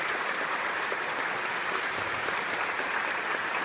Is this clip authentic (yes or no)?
yes